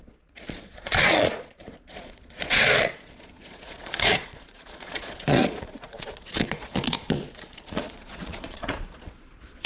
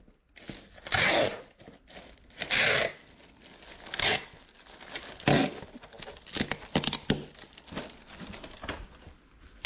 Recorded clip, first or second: second